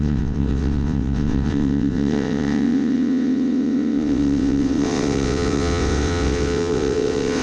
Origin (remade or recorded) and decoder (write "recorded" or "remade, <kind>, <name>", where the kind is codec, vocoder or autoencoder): remade, vocoder, WaveNeXt